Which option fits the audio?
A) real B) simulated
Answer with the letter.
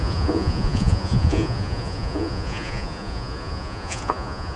B